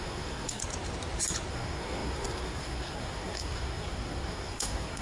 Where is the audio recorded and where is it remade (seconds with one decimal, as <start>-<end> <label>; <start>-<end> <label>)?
0.0-0.6 remade; 0.6-1.5 recorded; 1.5-5.0 remade